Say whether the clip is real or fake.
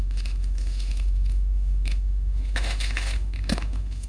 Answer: fake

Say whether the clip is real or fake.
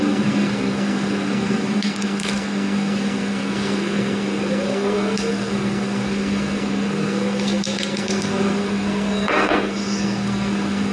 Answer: fake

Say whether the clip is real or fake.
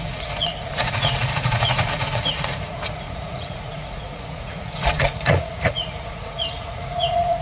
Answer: fake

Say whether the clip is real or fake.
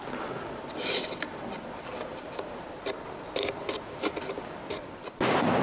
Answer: real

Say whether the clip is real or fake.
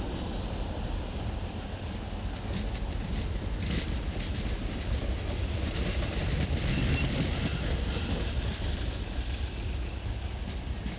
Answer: real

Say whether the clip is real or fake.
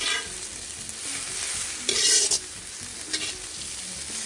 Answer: real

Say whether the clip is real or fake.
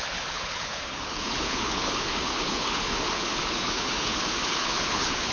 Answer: fake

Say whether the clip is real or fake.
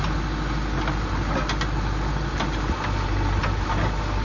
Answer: real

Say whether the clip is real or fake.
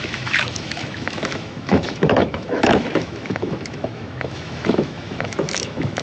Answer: fake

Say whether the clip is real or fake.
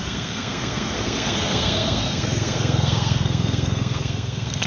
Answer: fake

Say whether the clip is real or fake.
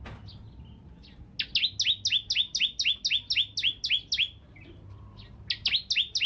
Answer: real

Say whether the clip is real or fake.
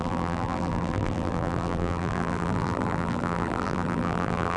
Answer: fake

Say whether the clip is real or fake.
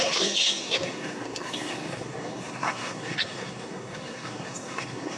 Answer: fake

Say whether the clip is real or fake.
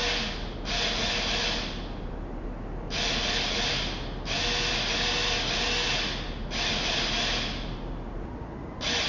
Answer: real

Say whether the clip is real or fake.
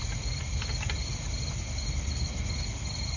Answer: real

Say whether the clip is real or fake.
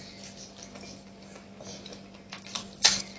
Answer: real